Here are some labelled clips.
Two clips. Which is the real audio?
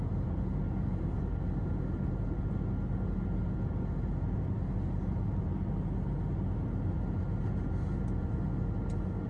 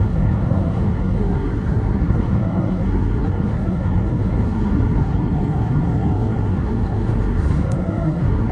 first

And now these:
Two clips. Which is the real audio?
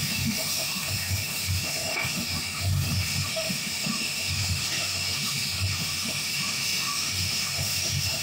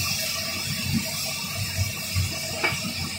second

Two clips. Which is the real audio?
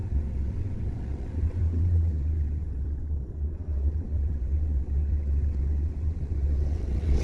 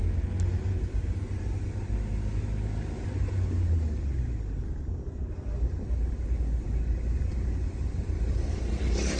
second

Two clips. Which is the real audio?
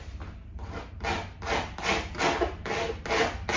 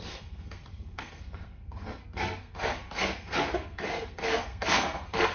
first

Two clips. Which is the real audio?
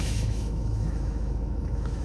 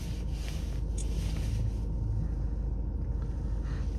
second